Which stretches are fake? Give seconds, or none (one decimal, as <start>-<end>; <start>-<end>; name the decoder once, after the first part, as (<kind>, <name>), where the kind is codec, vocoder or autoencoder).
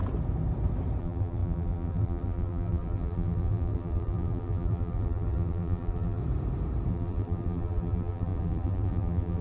1.0-6.2 (vocoder, BigVGAN v2); 6.9-9.4